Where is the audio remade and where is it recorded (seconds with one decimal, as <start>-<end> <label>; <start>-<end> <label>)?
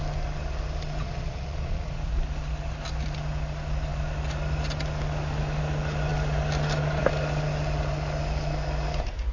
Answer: 0.0-1.0 recorded; 1.0-2.1 remade; 2.1-9.3 recorded